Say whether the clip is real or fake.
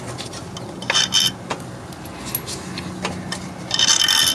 real